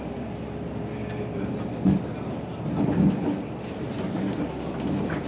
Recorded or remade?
recorded